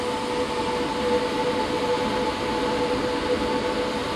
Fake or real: real